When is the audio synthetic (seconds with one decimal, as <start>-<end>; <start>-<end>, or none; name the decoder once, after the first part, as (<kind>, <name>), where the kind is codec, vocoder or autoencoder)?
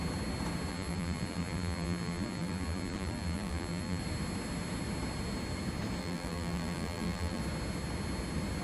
0.7-4.0 (vocoder, BigVGAN v2); 6.0-7.4